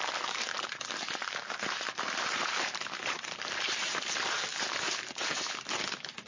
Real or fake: fake